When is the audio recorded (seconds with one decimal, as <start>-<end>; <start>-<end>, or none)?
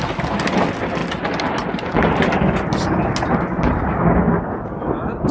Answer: 0.0-5.3